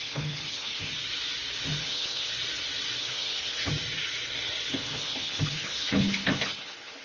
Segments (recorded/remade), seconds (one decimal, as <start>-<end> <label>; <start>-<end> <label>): 0.0-0.9 remade; 0.9-1.8 recorded; 1.8-2.3 remade; 2.3-3.0 recorded; 3.0-3.7 remade; 3.7-4.7 recorded; 4.7-7.0 remade